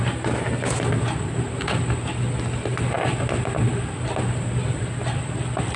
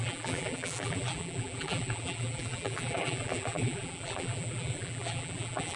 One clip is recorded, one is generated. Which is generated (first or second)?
second